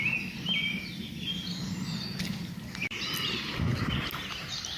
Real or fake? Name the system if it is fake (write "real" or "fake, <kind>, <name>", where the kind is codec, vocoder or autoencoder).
real